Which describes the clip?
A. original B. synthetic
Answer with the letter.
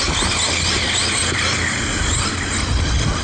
A